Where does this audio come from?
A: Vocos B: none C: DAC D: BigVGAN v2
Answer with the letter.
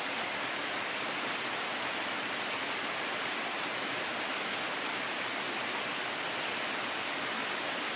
B